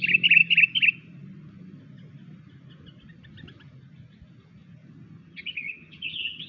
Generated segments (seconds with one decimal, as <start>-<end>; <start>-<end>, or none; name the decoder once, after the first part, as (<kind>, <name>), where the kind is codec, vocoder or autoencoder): 5.2-6.5 (vocoder, HiFi-GAN)